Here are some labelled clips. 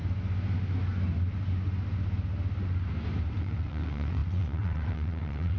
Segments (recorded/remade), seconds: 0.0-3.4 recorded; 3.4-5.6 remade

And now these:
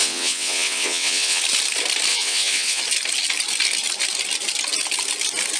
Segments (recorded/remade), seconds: 0.0-1.4 remade; 1.4-2.1 recorded; 2.1-2.8 remade; 2.8-5.6 recorded

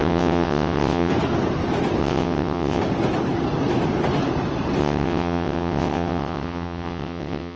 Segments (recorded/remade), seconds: 0.0-1.1 remade; 1.1-2.0 recorded; 2.0-2.8 remade; 2.8-4.8 recorded; 4.8-7.6 remade

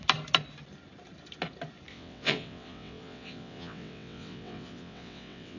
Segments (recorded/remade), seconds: 0.0-1.9 recorded; 1.9-5.6 remade

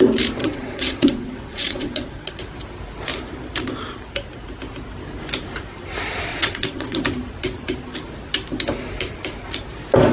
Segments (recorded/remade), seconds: 0.0-0.4 recorded; 0.4-2.4 remade; 2.4-6.3 recorded; 6.3-7.0 remade; 7.0-10.1 recorded

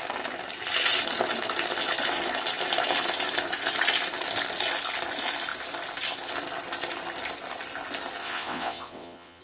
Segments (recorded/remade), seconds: 0.0-8.2 recorded; 8.2-9.4 remade